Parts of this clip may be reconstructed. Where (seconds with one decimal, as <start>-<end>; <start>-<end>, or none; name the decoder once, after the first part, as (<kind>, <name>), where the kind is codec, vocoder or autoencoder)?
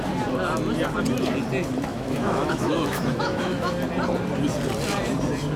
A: 1.9-3.7 (autoencoder, DAC-VAE)